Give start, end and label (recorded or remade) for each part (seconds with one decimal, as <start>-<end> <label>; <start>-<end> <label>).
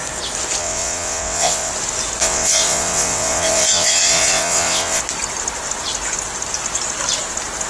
0.0-0.6 recorded; 0.6-1.7 remade; 1.7-2.2 recorded; 2.2-5.0 remade; 5.0-7.7 recorded